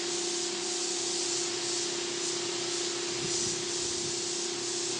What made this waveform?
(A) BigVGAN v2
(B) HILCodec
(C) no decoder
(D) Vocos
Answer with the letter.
C